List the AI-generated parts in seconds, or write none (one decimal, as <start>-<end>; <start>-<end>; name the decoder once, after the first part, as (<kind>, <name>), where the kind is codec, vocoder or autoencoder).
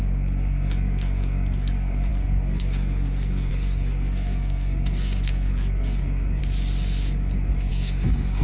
0.0-6.4 (codec, SNAC); 7.7-8.4